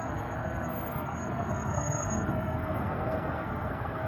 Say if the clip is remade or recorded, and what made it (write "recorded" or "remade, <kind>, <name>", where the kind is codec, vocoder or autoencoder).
remade, codec, SNAC